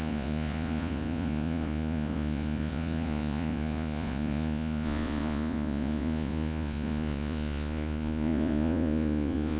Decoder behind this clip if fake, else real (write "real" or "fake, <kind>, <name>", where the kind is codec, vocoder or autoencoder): fake, vocoder, Vocos